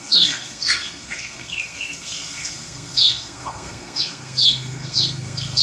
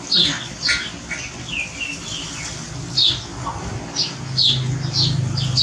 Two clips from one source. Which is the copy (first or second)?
first